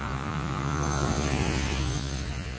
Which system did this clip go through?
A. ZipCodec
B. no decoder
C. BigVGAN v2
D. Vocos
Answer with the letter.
D